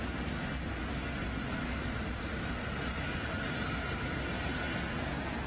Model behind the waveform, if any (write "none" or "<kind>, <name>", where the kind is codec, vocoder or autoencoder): none